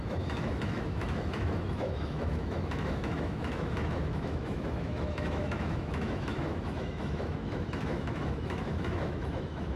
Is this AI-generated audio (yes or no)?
yes